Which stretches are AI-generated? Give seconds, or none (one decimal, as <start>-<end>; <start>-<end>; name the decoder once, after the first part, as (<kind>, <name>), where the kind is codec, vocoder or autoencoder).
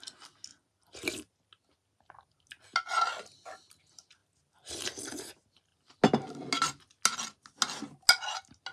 4.2-5.3 (vocoder, BigVGAN v2)